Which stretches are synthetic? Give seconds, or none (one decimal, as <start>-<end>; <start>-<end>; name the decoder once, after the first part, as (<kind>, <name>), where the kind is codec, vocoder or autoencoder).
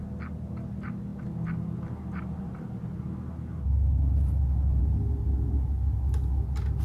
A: none